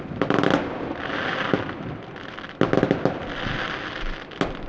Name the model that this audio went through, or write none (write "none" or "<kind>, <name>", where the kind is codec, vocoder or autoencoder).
none